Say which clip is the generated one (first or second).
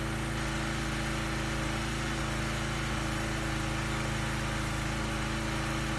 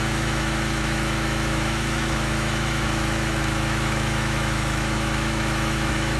second